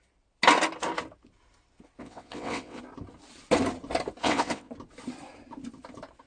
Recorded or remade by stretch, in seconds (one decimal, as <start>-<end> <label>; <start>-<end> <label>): 0.0-2.0 recorded; 2.0-2.8 remade; 2.8-4.2 recorded; 4.2-4.7 remade; 4.7-6.3 recorded